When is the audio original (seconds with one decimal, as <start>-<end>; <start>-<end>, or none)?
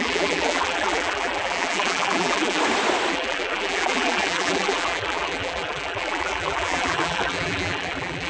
2.6-3.1